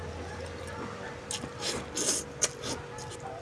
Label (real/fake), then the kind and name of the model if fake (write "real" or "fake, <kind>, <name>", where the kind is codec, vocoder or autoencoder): real